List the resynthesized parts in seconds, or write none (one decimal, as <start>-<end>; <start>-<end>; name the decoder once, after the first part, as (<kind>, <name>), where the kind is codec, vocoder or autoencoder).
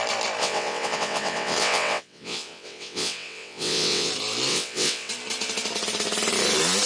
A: 0.4-4.1 (vocoder, WaveNeXt); 4.5-5.1